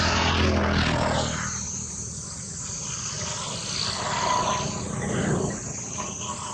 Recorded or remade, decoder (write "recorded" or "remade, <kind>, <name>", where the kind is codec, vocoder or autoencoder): recorded